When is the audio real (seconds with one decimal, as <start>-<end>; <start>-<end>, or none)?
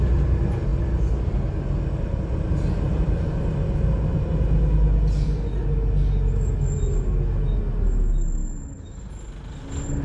0.0-10.0